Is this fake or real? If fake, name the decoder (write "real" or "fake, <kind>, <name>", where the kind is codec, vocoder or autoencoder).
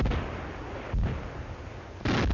real